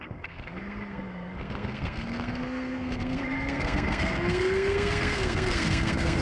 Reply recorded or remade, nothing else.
remade